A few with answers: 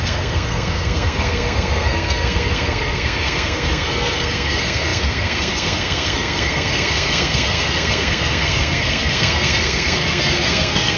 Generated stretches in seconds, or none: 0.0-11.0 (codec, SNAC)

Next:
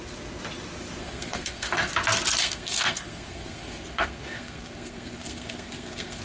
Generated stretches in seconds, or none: 1.0-1.9 (codec, SNAC); 2.4-6.2

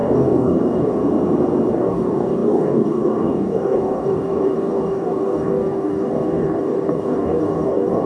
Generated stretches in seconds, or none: 0.0-1.0 (codec, DAC); 1.7-8.1

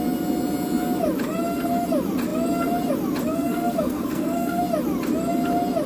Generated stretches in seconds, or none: 3.3-4.6 (codec, SNAC)

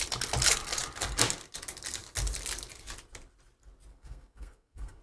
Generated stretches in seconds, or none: 3.9-5.0 (codec, SNAC)

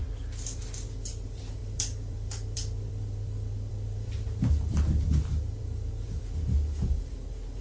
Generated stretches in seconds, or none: 1.6-6.2 (vocoder, BigVGAN v2)

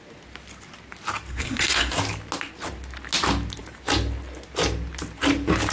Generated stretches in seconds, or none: 1.3-1.9 (codec, SNAC)